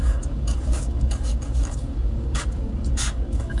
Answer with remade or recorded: remade